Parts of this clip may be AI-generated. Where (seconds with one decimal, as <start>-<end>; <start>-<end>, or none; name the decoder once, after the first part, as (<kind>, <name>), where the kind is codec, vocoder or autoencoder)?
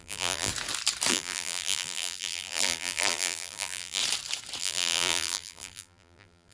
0.0-0.5 (vocoder, BigVGAN v2); 1.1-4.0; 4.6-6.5